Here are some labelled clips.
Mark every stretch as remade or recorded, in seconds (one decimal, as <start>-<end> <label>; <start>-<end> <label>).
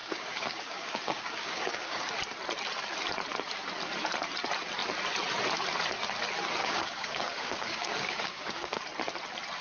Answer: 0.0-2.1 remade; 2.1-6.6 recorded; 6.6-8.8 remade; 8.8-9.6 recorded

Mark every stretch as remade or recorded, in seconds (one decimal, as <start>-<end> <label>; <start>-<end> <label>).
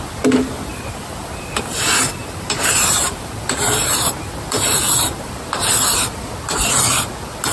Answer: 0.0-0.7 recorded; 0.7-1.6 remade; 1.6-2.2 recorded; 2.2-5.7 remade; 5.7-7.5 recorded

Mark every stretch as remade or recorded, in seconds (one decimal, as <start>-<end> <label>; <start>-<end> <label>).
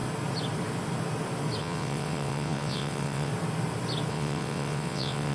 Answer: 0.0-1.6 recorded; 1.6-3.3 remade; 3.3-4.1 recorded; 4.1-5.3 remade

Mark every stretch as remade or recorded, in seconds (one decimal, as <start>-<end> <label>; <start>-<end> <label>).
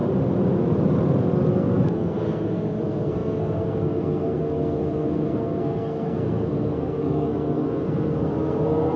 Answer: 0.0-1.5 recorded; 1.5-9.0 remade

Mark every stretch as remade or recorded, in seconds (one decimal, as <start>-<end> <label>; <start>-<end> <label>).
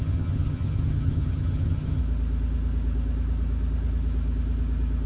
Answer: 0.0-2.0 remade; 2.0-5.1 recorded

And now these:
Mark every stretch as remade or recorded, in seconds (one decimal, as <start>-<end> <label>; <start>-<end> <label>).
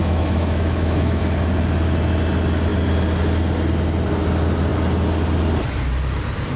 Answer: 0.0-1.2 remade; 1.2-6.6 recorded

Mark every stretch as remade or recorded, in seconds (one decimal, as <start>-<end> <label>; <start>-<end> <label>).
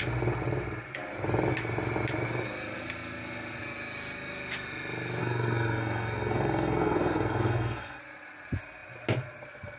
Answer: 0.0-5.2 recorded; 5.2-8.0 remade; 8.0-9.8 recorded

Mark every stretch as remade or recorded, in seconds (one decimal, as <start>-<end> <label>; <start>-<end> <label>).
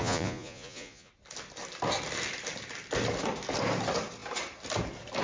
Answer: 0.0-1.1 remade; 1.1-5.2 recorded